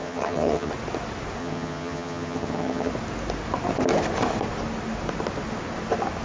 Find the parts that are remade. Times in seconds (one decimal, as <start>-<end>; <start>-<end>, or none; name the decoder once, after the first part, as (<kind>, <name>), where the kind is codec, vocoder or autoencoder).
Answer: 0.0-0.7 (vocoder, HiFi-GAN); 1.4-2.9